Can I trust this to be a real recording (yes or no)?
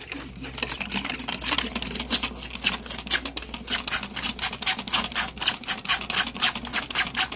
yes